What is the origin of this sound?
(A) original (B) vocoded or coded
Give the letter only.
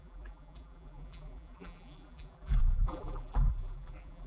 B